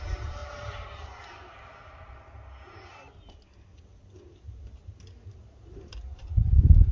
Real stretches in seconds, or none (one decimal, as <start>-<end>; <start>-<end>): 0.0-6.9

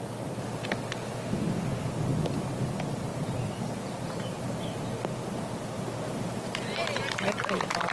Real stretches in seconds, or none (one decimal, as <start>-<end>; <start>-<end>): 0.0-3.1; 4.6-7.9

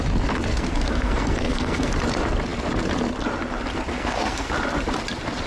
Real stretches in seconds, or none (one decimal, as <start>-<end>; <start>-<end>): 0.0-0.5; 1.9-3.9; 4.5-5.5